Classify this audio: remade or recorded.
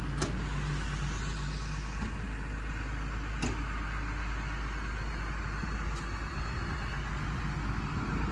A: recorded